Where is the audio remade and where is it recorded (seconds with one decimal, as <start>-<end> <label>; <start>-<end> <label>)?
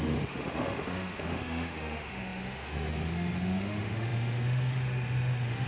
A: 0.0-5.7 remade